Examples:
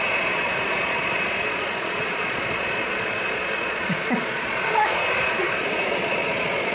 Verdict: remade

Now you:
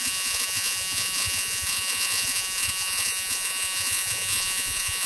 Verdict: remade